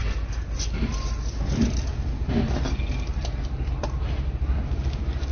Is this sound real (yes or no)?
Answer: yes